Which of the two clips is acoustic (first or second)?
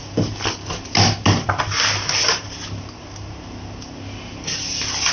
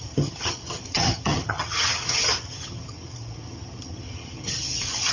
first